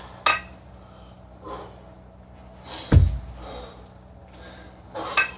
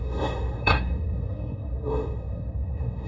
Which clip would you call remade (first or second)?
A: second